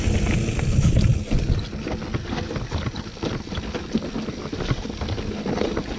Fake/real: real